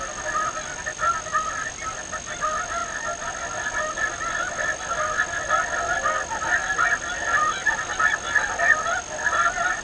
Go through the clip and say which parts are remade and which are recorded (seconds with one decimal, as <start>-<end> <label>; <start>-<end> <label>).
0.0-9.8 recorded